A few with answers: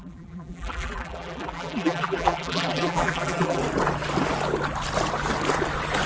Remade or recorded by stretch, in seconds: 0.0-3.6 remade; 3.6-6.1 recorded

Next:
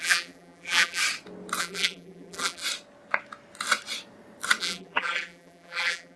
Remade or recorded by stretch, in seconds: 0.0-1.0 remade; 1.0-1.6 recorded; 1.6-2.6 remade; 2.6-4.6 recorded; 4.6-6.2 remade

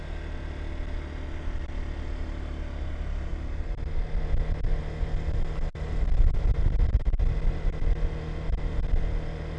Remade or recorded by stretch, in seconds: 0.0-9.6 recorded

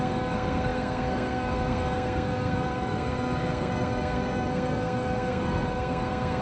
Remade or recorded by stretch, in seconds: 0.0-6.4 remade

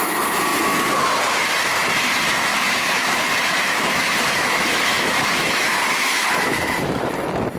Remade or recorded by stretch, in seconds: 0.0-2.5 recorded; 2.5-7.1 remade; 7.1-7.6 recorded

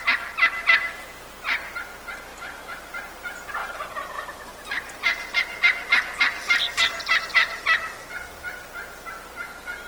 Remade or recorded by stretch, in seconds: 0.0-2.3 recorded; 2.3-2.9 remade; 2.9-3.6 recorded; 3.6-7.2 remade; 7.2-9.9 recorded

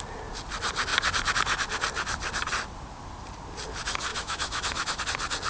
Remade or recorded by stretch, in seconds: 0.0-4.1 recorded; 4.1-5.0 remade; 5.0-5.5 recorded